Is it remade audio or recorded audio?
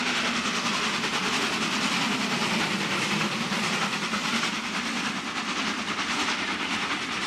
recorded